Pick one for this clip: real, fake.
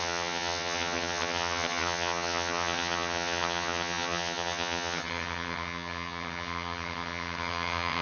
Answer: fake